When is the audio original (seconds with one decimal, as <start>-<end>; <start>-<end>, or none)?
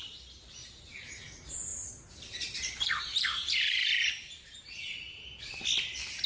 0.0-0.6; 1.1-1.7; 4.7-6.3